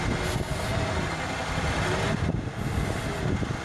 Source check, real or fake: real